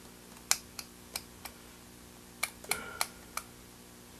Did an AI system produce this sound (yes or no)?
no